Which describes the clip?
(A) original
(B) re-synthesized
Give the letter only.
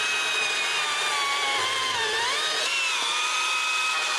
A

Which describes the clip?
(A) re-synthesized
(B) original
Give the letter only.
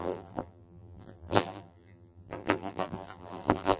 A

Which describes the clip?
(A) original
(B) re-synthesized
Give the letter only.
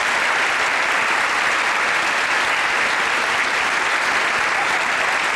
A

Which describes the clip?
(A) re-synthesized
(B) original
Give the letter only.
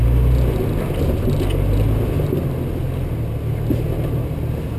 B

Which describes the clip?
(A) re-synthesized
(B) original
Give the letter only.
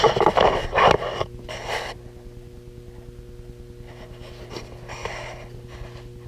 B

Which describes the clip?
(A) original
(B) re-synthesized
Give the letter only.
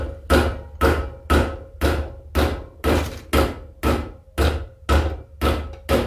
A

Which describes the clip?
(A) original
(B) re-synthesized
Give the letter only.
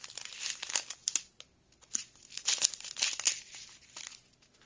A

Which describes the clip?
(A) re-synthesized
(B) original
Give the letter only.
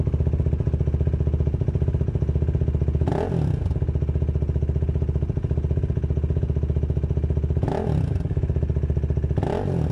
B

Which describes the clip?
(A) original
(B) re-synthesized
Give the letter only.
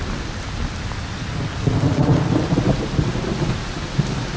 A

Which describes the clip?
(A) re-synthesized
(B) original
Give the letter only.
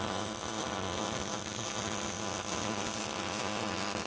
B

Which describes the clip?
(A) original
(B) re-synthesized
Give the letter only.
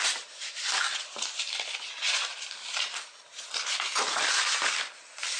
A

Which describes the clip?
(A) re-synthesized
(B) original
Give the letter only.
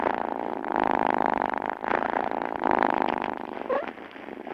B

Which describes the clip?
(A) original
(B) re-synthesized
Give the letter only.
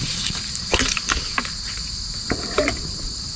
B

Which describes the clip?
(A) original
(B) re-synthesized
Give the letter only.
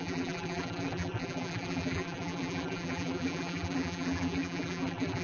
B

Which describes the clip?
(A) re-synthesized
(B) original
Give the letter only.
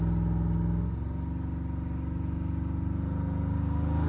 B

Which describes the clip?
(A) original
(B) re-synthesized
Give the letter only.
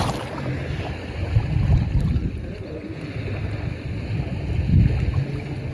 A